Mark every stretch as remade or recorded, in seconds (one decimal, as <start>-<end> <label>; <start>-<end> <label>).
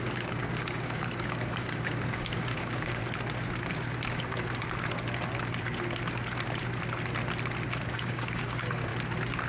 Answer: 0.0-3.0 remade; 3.0-7.9 recorded; 7.9-8.9 remade; 8.9-9.5 recorded